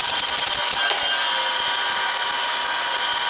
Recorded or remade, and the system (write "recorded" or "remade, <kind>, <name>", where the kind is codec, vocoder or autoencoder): recorded